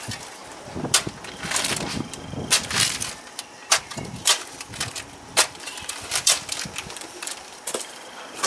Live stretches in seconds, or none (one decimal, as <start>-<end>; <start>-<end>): 0.4-3.8